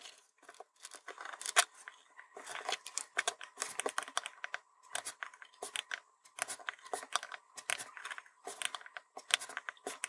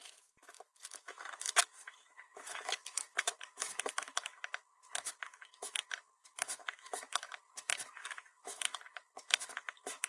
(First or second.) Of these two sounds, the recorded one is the first